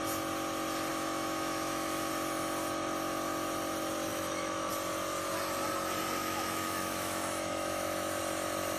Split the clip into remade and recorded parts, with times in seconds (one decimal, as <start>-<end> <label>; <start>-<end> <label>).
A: 0.0-0.9 recorded; 0.9-2.1 remade; 2.1-4.1 recorded; 4.1-4.7 remade; 4.7-6.2 recorded; 6.2-8.2 remade; 8.2-8.8 recorded